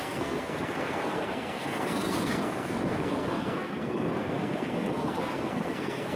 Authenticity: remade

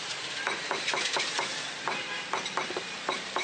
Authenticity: remade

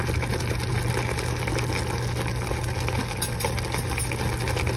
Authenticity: recorded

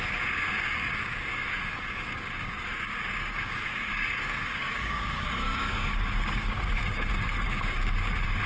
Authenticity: remade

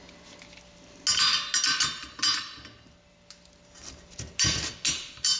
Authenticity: recorded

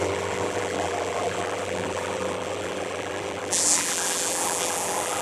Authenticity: remade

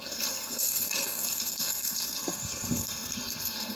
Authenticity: remade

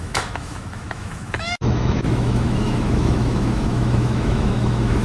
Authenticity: remade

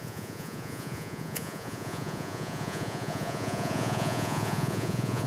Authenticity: remade